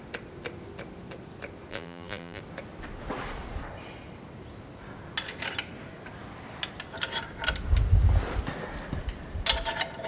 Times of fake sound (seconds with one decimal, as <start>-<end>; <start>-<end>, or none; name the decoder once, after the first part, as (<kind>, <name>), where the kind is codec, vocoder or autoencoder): 1.7-2.4 (vocoder, BigVGAN v2)